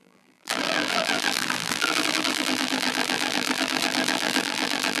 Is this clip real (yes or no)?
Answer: no